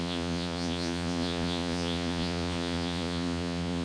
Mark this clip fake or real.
fake